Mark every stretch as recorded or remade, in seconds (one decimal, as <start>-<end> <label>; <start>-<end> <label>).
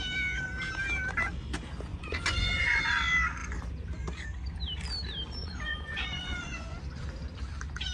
0.0-1.9 recorded; 1.9-2.9 remade; 2.9-5.4 recorded; 5.4-6.8 remade; 6.8-7.9 recorded